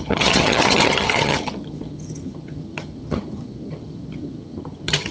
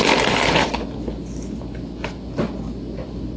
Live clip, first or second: second